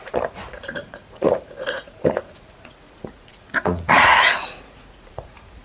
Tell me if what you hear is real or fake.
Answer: fake